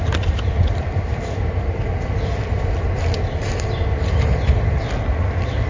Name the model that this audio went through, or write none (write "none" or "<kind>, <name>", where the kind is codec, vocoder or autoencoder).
none